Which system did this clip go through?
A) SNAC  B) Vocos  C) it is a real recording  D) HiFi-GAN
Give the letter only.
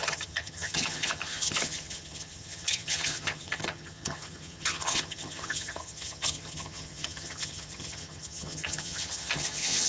D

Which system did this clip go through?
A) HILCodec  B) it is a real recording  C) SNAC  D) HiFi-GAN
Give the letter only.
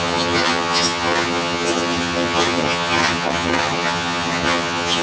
D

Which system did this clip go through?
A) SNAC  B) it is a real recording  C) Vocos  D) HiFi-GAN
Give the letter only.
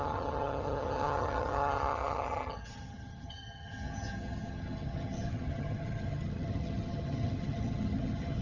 D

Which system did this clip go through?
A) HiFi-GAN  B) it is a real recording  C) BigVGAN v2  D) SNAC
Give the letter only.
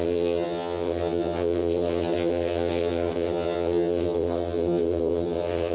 A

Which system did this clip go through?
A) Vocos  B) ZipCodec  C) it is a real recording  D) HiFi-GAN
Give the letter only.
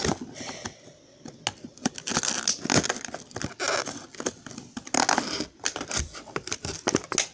C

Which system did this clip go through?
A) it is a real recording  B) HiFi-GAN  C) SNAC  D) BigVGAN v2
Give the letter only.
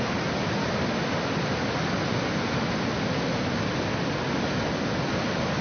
A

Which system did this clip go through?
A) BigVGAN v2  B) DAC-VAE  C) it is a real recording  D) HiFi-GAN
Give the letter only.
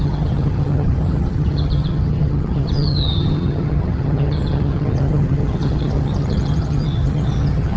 D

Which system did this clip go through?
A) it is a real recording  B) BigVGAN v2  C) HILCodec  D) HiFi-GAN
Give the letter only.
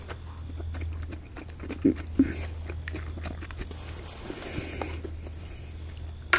A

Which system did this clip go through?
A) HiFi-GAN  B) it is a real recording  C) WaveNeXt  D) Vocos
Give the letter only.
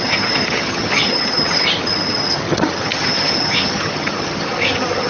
A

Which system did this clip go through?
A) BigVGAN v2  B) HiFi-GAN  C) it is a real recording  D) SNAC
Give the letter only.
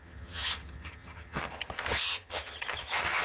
B